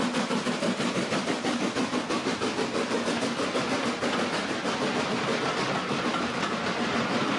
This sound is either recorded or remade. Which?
recorded